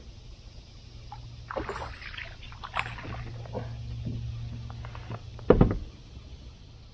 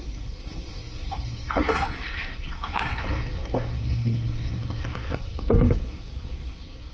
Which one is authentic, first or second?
first